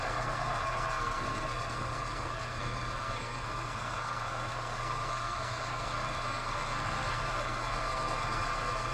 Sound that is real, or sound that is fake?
fake